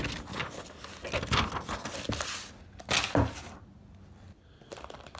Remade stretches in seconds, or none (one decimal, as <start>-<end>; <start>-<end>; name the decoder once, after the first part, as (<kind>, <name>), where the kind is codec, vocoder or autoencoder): none